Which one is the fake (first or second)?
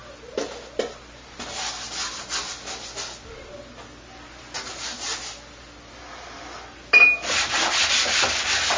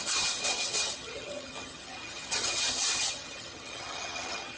second